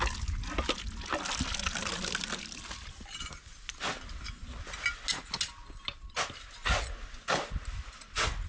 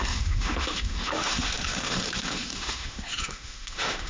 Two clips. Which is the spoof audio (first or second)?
second